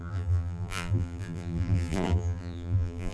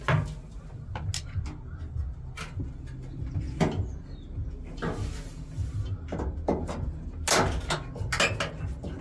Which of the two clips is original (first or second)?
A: second